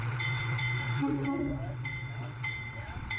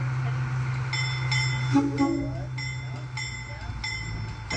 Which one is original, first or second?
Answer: second